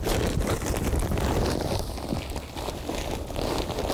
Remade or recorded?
recorded